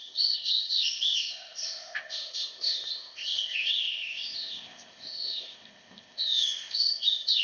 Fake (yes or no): yes